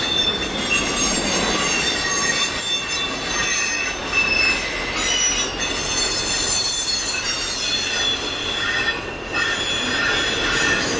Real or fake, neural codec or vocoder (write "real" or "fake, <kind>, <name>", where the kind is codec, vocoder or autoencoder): real